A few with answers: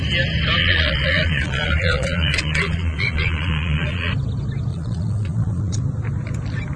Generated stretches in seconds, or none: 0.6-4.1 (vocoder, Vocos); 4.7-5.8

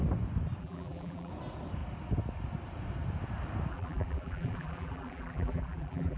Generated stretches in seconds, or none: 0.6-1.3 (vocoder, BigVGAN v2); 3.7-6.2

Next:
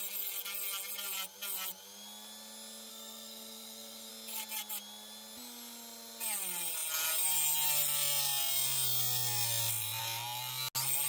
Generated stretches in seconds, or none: 2.9-4.1 (codec, SNAC)

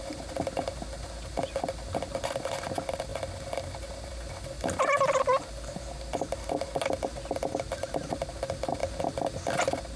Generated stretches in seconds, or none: 3.1-4.6 (vocoder, BigVGAN v2)

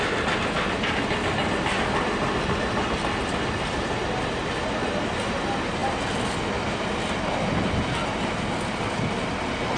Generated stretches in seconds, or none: none

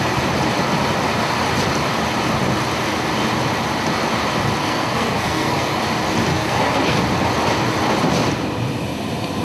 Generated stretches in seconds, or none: 4.6-5.8 (codec, SNAC); 6.3-7.0

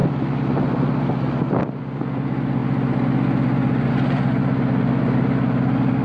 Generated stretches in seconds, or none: none

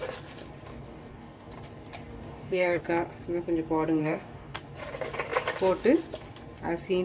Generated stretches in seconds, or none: 0.7-1.5 (codec, DAC); 2.1-2.8; 4.0-4.6